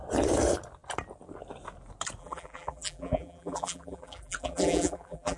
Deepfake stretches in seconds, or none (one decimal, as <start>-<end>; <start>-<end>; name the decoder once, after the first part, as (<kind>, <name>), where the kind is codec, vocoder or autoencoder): 2.2-5.4 (vocoder, BigVGAN v2)